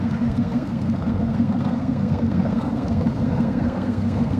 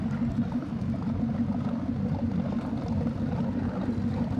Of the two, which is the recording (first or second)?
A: second